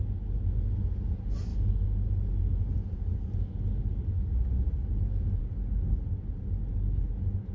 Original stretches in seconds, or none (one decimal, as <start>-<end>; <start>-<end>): 0.0-7.5